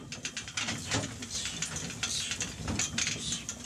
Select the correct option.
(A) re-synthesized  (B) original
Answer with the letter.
B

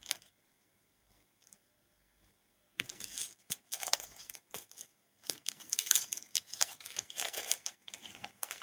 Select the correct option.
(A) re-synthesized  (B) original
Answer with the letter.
A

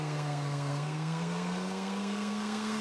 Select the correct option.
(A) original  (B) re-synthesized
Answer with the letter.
B